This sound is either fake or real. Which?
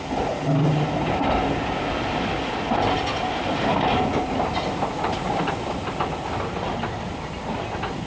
real